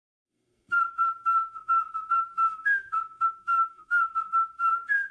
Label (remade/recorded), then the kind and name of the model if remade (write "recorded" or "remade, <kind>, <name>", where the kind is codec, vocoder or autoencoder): remade, codec, SNAC